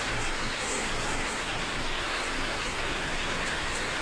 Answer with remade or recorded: remade